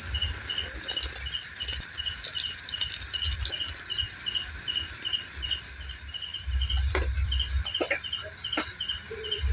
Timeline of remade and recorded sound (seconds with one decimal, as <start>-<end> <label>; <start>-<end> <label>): 0.0-9.5 recorded